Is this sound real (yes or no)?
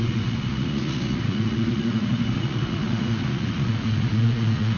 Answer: no